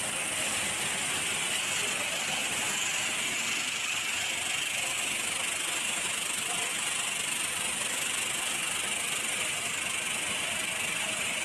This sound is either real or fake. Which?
real